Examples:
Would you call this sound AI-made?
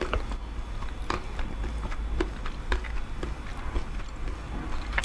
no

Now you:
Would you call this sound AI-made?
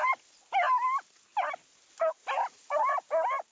no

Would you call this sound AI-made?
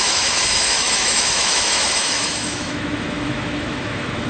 yes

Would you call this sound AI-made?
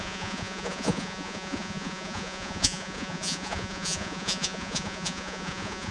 yes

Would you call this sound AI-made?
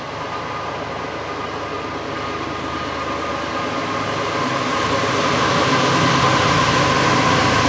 no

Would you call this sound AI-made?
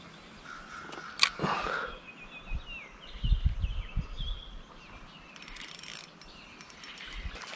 no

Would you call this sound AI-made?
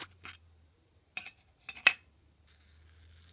no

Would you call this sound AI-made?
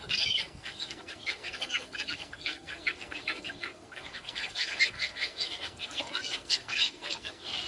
yes